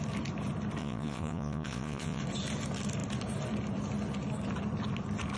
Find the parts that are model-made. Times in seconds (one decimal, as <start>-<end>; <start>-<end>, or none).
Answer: 0.8-2.2

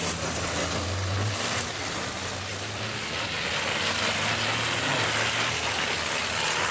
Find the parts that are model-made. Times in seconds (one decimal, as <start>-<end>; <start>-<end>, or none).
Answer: none

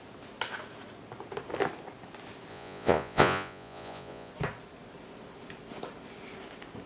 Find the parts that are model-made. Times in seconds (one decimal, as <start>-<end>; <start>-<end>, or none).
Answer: 2.5-4.3

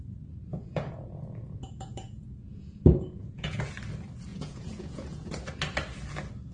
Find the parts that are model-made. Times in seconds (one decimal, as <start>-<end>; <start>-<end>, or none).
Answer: 0.5-3.6; 4.3-5.3

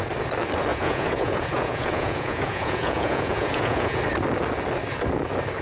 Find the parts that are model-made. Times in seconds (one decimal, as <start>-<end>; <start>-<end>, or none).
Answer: 0.7-4.0